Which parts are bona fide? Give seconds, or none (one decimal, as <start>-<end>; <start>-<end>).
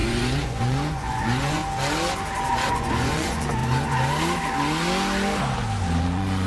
1.6-2.7; 3.6-6.0